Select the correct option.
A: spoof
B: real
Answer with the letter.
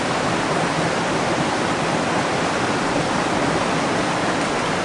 B